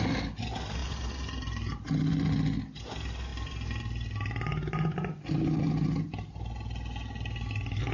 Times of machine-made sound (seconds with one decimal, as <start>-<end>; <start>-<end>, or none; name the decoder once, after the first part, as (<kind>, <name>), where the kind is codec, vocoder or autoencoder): none

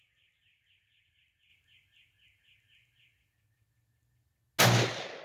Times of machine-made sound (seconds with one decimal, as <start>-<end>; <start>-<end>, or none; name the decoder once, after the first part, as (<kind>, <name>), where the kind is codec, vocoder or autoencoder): none

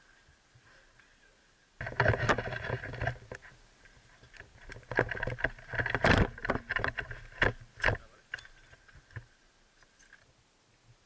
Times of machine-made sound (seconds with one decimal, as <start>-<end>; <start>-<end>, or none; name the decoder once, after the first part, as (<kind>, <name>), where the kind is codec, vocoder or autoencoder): none

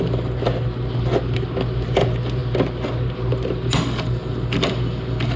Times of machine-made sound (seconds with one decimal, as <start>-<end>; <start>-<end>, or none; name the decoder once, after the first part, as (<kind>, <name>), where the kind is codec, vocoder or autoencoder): none